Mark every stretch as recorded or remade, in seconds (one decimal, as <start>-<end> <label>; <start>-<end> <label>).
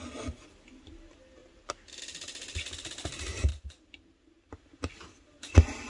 0.0-1.4 recorded; 1.4-2.0 remade; 2.0-3.5 recorded; 3.5-4.5 remade; 4.5-5.9 recorded